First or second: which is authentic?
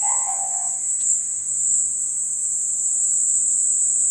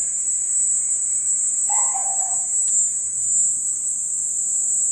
second